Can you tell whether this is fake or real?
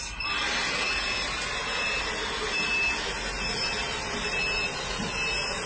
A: real